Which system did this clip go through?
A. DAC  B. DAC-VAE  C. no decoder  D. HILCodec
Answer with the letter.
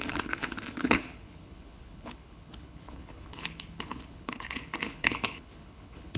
D